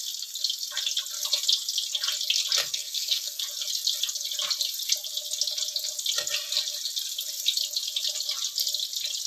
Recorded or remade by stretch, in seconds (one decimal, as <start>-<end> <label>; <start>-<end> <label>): 0.0-2.6 recorded; 2.6-3.4 remade; 3.4-9.3 recorded